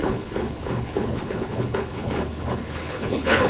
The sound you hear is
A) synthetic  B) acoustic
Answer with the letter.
A